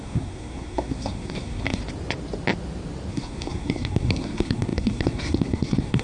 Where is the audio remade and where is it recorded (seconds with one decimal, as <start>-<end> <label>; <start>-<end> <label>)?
0.0-1.8 remade; 1.8-3.1 recorded; 3.1-6.0 remade